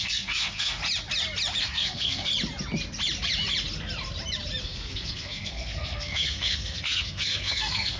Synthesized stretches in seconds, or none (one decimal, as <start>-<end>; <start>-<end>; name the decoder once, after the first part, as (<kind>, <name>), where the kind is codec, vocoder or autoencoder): 0.0-0.8 (codec, SNAC); 1.6-2.3; 4.6-8.0